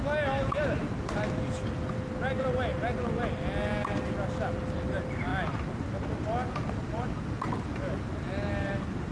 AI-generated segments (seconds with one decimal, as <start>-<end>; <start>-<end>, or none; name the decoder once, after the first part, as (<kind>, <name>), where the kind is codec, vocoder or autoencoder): none